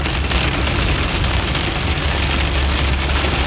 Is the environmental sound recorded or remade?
recorded